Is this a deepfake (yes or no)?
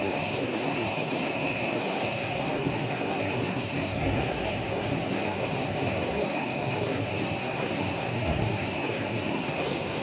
yes